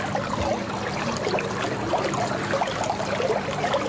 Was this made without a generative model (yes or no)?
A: yes